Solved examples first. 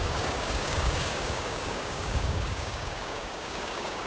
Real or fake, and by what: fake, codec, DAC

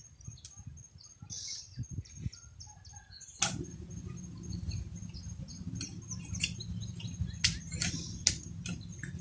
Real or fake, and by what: real